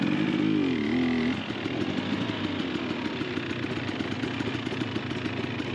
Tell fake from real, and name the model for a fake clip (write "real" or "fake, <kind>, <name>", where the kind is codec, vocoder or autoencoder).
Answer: real